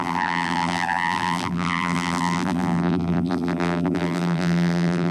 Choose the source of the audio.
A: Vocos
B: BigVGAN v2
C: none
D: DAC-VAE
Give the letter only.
B